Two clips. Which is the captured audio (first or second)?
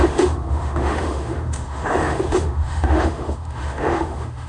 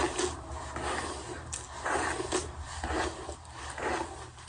second